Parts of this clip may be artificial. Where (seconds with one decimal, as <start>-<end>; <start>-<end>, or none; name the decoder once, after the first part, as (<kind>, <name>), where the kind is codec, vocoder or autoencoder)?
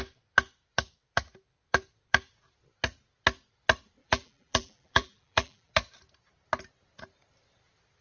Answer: 4.0-5.7 (vocoder, BigVGAN v2)